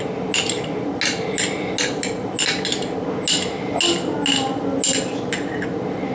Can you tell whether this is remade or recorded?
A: recorded